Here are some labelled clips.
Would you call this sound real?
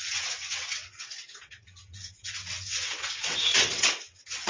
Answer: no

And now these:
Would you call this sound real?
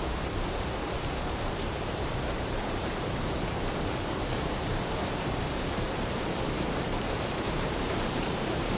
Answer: no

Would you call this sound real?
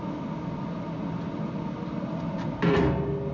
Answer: yes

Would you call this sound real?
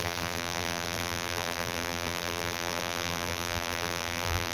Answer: no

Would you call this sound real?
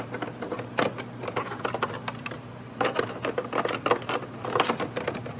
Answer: yes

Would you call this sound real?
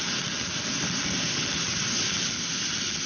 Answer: yes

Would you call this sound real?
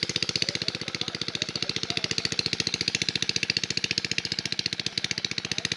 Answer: yes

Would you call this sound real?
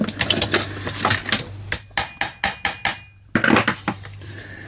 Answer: yes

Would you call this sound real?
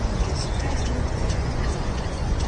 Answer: no